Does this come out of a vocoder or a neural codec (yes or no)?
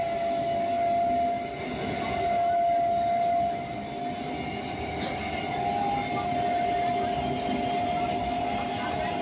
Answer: no